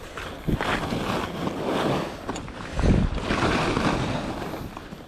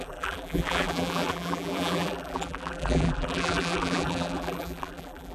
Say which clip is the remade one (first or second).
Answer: second